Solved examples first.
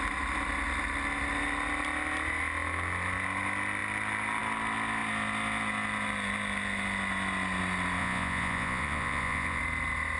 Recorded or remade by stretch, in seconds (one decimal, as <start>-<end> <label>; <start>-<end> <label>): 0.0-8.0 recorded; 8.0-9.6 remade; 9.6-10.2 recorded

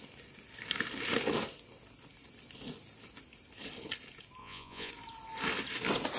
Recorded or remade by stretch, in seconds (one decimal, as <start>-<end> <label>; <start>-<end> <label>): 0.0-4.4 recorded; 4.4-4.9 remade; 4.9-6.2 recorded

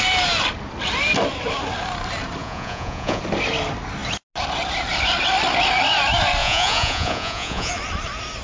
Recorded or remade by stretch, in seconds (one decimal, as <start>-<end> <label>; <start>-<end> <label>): 0.0-2.4 recorded; 2.4-3.2 remade; 3.2-6.4 recorded; 6.4-7.7 remade; 7.7-8.4 recorded

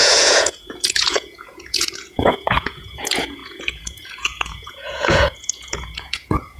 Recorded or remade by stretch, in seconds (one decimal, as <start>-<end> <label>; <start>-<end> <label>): 0.0-6.6 remade

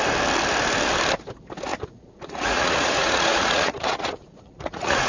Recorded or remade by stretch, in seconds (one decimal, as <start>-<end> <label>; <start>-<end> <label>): 0.0-1.7 recorded; 1.7-5.1 remade

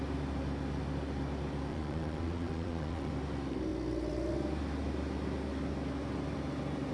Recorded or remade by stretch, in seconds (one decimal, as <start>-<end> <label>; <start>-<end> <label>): 0.0-1.7 recorded; 1.7-3.1 remade; 3.1-6.9 recorded